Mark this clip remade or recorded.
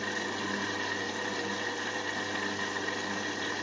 recorded